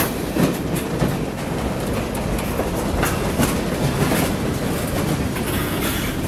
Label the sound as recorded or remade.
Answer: recorded